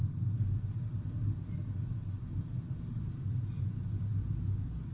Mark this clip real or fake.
real